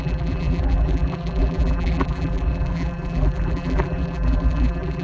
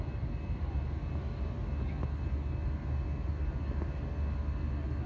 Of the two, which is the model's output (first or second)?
first